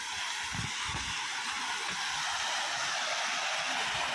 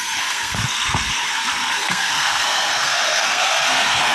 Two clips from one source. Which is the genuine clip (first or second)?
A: first